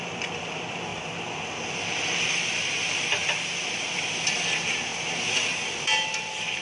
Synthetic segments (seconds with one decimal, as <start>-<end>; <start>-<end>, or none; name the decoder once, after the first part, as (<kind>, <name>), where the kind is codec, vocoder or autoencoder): 0.0-0.9 (vocoder, BigVGAN v2); 1.7-3.2; 3.7-4.9; 5.8-6.6